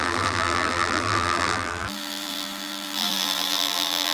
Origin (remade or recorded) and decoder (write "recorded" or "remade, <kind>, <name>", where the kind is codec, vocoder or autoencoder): remade, vocoder, BigVGAN v2